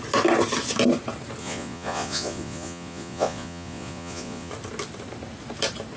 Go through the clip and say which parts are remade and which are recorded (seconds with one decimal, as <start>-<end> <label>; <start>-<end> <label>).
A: 0.0-1.4 recorded; 1.4-4.5 remade; 4.5-6.0 recorded

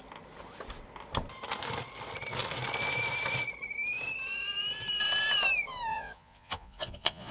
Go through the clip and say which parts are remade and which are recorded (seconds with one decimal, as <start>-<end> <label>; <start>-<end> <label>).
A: 0.0-5.9 recorded; 5.9-7.3 remade

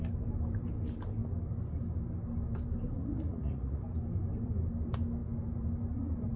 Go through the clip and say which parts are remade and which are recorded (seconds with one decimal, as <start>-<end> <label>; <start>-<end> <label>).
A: 0.0-3.0 recorded; 3.0-3.8 remade; 3.8-6.4 recorded

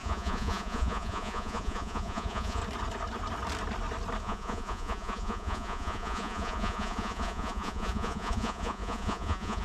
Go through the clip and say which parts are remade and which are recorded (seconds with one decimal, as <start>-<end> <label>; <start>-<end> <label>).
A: 0.0-2.6 remade; 2.6-4.2 recorded; 4.2-9.6 remade